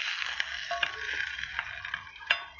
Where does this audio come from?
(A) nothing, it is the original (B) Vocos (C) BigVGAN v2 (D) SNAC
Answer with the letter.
A